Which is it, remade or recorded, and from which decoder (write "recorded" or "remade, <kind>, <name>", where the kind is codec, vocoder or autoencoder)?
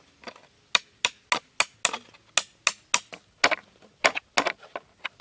recorded